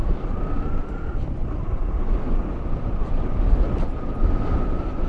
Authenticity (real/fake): real